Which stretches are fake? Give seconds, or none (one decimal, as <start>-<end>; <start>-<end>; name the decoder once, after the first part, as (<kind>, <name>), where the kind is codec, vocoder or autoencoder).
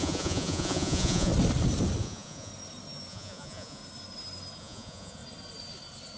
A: 0.0-1.3 (vocoder, Vocos); 2.0-2.5; 3.1-3.8; 4.6-5.2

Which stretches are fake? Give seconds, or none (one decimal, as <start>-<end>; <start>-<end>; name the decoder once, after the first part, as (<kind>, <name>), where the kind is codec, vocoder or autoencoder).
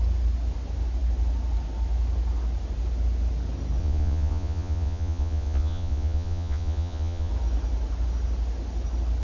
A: 3.8-7.3 (vocoder, Vocos)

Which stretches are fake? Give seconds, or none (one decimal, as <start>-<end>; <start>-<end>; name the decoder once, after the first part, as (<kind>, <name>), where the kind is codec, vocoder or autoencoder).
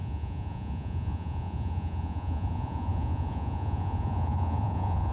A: 0.0-5.1 (vocoder, Vocos)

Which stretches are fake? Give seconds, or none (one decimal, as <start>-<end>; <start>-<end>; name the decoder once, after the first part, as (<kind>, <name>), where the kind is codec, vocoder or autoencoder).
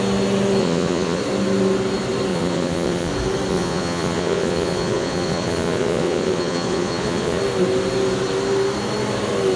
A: 0.6-1.2 (vocoder, Vocos); 2.3-3.1; 3.5-7.4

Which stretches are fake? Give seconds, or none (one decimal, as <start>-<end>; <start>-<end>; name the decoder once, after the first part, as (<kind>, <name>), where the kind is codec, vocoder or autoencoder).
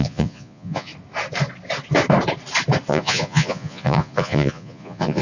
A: 0.0-0.9 (vocoder, Vocos); 2.9-5.2